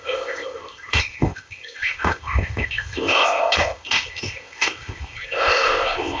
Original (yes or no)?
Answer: no